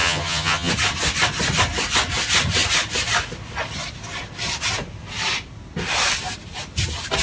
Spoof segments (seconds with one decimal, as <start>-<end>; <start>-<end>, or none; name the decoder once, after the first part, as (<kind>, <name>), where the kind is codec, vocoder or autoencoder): 0.0-0.7 (vocoder, HiFi-GAN)

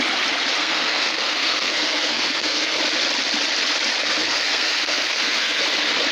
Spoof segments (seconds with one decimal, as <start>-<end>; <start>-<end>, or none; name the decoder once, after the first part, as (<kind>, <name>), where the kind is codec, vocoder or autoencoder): 0.6-2.8 (codec, SNAC); 4.0-5.6